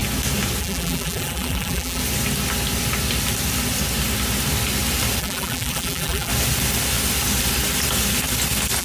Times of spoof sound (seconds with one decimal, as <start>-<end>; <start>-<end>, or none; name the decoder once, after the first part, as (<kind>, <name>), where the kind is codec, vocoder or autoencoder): 0.6-2.0 (vocoder, BigVGAN v2); 5.2-6.3